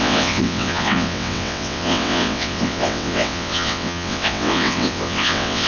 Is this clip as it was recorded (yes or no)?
no